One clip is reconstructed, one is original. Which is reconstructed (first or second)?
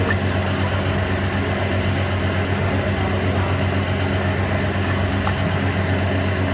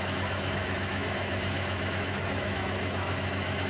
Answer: second